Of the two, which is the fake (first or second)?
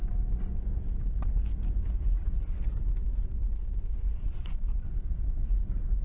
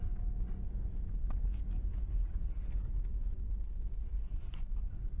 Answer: first